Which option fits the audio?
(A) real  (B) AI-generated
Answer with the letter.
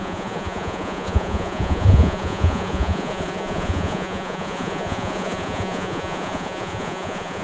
B